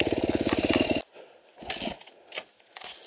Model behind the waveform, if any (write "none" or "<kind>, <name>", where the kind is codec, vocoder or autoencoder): none